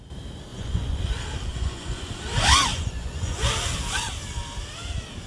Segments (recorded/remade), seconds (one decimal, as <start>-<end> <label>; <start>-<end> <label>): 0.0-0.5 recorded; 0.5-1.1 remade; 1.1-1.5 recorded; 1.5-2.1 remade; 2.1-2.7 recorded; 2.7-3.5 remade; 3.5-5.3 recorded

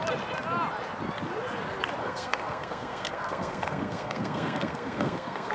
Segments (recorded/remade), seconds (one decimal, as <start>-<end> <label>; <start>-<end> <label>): 0.0-2.0 recorded; 2.0-5.5 remade

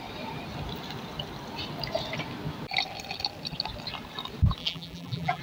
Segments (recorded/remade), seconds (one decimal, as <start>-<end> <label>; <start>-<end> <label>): 0.0-4.6 recorded; 4.6-5.4 remade